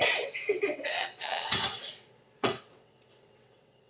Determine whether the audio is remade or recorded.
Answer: remade